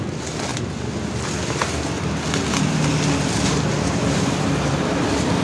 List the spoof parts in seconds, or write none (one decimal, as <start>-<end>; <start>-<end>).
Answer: none